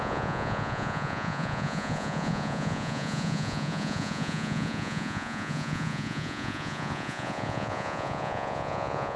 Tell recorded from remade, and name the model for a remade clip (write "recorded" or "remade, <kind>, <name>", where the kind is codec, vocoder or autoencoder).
remade, vocoder, Vocos